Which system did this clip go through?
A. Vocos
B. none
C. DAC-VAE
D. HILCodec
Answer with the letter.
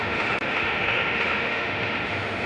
C